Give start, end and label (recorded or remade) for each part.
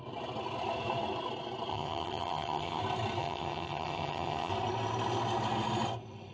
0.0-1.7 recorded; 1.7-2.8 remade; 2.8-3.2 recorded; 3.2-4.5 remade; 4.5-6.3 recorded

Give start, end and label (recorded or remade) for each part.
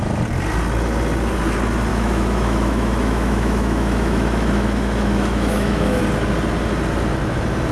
0.0-1.9 recorded; 1.9-6.0 remade; 6.0-7.7 recorded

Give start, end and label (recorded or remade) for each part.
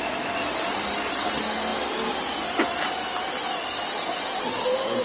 0.0-5.0 recorded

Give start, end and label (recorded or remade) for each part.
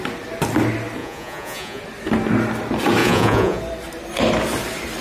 0.0-1.0 recorded; 1.0-1.8 remade; 1.8-3.0 recorded; 3.0-3.6 remade; 3.6-5.0 recorded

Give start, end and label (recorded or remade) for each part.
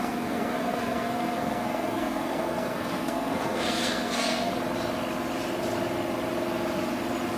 0.0-4.5 remade; 4.5-7.4 recorded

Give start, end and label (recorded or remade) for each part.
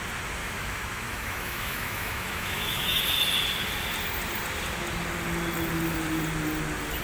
0.0-0.4 recorded; 0.4-3.0 remade; 3.0-7.0 recorded